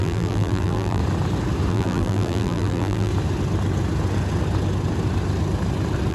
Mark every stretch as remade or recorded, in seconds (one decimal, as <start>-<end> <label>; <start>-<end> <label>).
0.0-1.0 remade; 1.0-1.7 recorded; 1.7-3.1 remade; 3.1-6.1 recorded